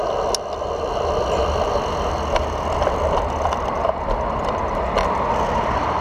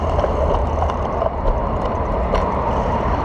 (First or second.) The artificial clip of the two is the second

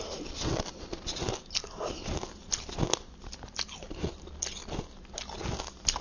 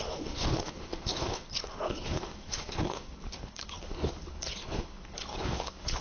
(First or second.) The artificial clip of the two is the second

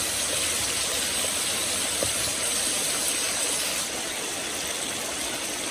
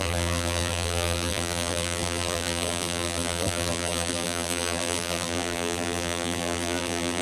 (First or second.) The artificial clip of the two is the second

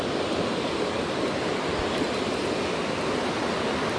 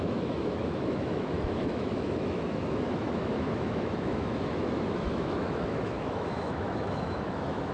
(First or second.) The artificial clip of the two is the second